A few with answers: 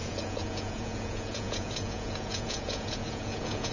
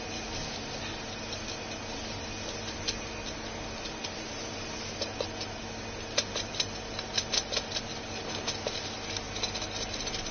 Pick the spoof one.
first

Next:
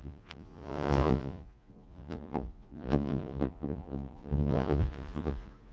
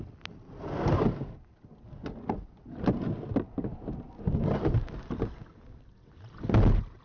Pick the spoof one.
first